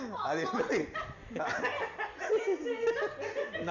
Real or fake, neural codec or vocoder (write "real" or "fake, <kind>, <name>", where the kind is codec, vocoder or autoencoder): real